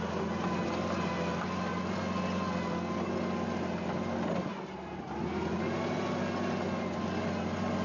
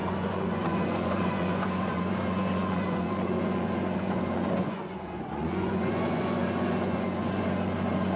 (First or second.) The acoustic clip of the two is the first